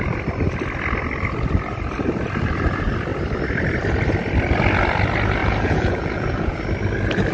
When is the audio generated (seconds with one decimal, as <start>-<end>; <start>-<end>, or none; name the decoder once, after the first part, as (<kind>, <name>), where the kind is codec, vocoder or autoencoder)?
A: 5.4-6.6 (vocoder, Vocos)